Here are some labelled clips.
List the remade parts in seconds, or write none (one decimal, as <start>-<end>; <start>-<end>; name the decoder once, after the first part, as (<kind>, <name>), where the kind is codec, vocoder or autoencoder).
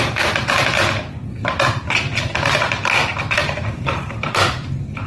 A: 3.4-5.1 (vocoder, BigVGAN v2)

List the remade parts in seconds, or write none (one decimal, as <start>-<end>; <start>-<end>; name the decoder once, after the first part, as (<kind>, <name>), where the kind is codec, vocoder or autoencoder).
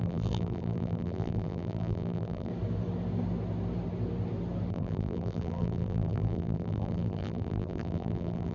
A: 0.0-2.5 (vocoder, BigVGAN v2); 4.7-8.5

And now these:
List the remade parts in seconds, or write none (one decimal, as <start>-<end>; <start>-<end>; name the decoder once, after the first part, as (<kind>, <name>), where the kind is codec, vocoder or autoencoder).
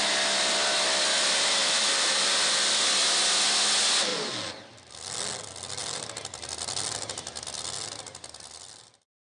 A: 1.6-2.8 (vocoder, BigVGAN v2); 4.1-4.9; 5.8-6.5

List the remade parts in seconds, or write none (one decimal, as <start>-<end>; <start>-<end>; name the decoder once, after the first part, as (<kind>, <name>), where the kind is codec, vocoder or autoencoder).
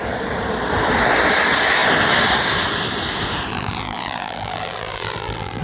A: 3.5-5.6 (vocoder, BigVGAN v2)